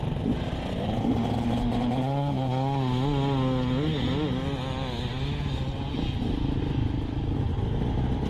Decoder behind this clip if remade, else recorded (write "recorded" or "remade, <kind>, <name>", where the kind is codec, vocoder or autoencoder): recorded